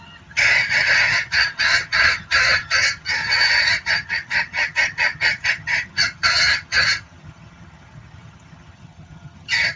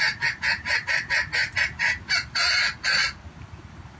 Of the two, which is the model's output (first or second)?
first